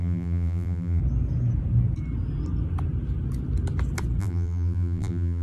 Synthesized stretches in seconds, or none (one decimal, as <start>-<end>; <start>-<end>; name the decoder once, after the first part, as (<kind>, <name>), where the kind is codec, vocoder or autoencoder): 0.0-1.0 (vocoder, BigVGAN v2); 4.2-5.4